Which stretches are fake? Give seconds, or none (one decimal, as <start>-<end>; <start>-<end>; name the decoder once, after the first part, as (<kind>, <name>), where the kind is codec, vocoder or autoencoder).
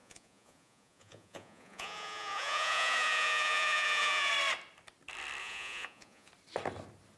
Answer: 0.0-4.3 (vocoder, Vocos); 5.4-6.3